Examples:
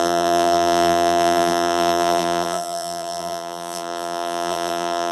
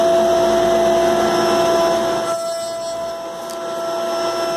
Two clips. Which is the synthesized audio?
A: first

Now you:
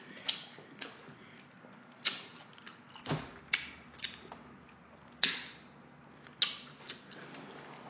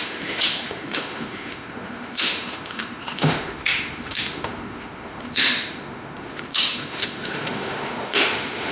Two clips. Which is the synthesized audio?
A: second